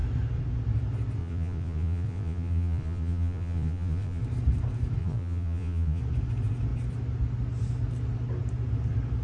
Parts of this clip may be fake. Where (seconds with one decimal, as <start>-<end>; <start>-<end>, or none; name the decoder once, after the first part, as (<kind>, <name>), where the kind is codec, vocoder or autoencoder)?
1.2-4.2 (vocoder, Vocos); 5.0-6.0